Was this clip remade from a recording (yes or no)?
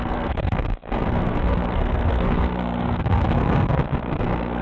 yes